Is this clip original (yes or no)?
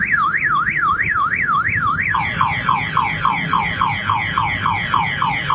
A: yes